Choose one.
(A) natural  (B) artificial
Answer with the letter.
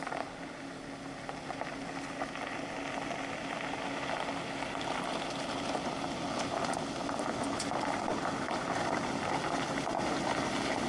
A